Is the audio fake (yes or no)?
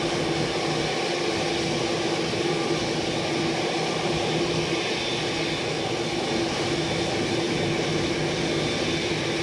no